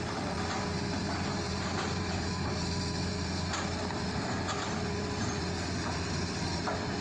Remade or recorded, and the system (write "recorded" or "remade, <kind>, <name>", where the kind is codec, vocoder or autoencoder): recorded